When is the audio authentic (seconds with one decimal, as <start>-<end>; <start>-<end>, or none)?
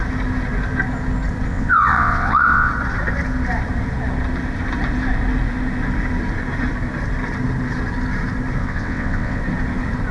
0.0-1.5; 2.7-8.6; 9.4-10.1